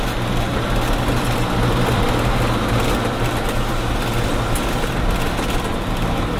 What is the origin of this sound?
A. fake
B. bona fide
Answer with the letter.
B